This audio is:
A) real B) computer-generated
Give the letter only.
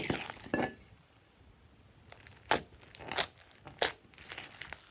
A